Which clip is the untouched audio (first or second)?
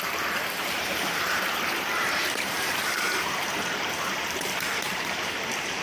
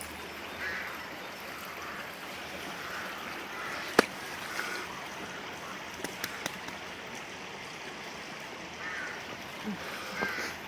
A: second